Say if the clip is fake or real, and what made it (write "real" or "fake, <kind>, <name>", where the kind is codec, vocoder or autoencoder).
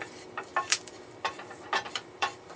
fake, vocoder, BigVGAN v2